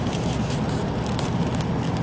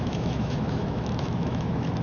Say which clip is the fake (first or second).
second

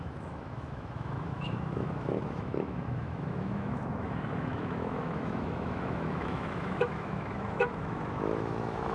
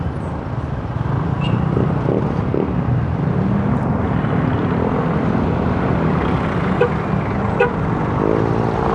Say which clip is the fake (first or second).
first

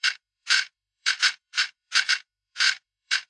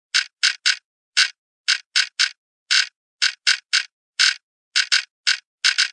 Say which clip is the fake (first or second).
first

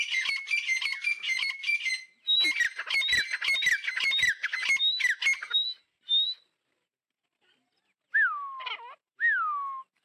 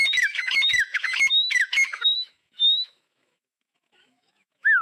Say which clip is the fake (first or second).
second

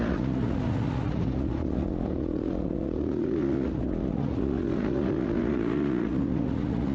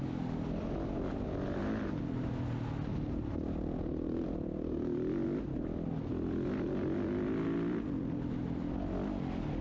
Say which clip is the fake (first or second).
first